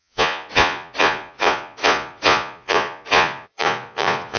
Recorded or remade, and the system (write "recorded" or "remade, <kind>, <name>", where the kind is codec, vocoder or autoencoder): remade, vocoder, Vocos